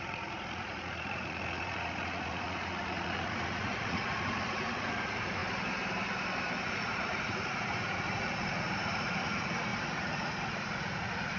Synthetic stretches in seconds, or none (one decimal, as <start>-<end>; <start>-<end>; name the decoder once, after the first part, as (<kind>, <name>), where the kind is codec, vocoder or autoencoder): 0.0-5.4 (vocoder, Vocos); 6.7-11.4